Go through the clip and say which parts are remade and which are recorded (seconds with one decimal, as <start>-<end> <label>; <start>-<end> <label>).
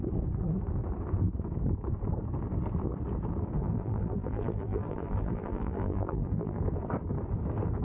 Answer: 0.0-3.6 recorded; 3.6-6.6 remade; 6.6-7.8 recorded